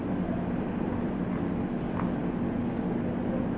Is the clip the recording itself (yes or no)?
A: yes